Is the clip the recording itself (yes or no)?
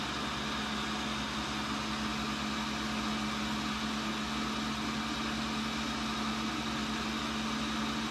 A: yes